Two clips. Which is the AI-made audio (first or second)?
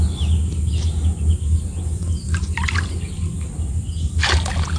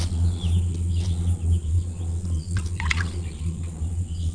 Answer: second